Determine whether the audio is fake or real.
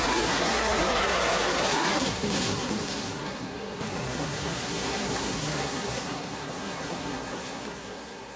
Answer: fake